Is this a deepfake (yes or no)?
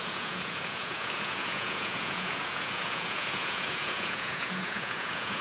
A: yes